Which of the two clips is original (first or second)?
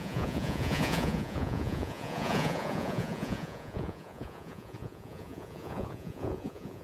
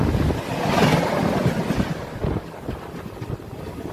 second